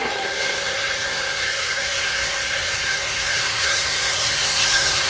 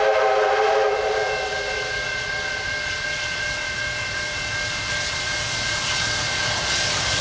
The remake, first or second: first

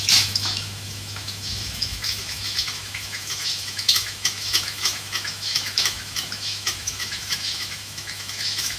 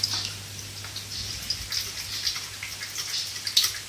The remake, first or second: first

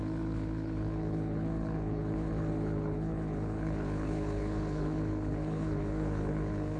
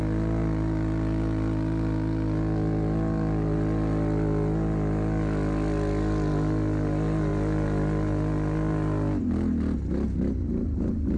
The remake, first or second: first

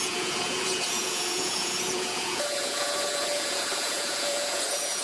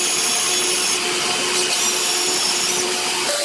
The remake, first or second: first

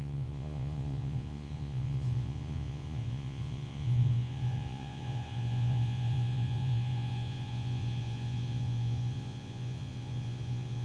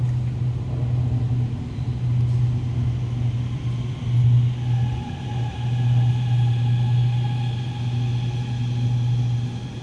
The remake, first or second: first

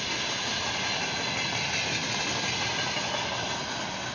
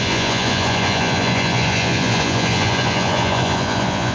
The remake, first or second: second